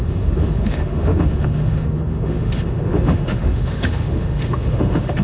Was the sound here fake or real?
fake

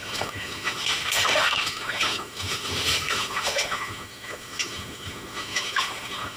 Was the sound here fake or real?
fake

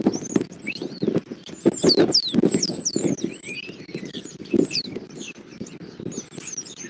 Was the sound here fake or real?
real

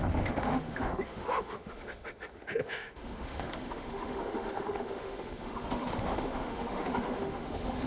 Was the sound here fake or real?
fake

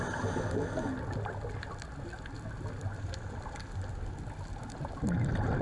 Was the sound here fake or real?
real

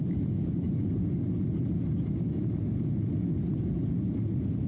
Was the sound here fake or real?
real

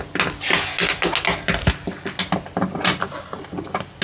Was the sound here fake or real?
real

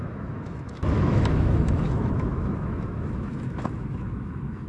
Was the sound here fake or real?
fake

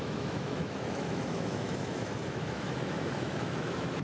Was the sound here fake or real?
fake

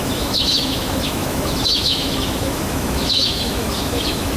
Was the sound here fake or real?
fake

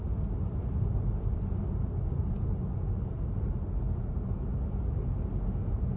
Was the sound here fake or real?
real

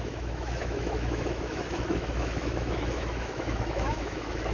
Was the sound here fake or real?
fake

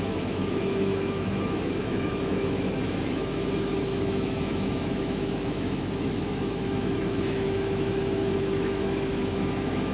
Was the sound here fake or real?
fake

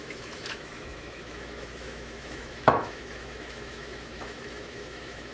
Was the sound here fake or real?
fake